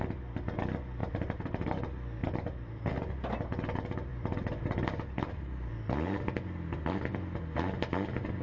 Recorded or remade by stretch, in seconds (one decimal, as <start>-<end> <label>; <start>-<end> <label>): 0.0-1.0 recorded; 1.0-1.8 remade; 1.8-2.2 recorded; 2.2-2.9 remade; 2.9-4.1 recorded; 4.1-5.7 remade; 5.7-8.4 recorded